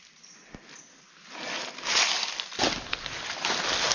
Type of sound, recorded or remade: recorded